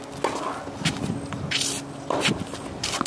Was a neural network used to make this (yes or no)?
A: no